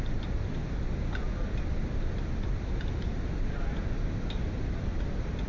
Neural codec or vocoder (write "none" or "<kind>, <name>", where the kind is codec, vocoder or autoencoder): none